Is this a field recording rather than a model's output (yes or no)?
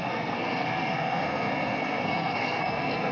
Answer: no